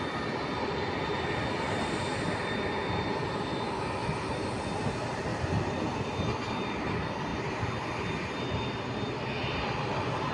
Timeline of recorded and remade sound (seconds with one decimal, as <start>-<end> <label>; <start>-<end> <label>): 0.0-5.3 recorded; 5.3-6.0 remade; 6.0-10.3 recorded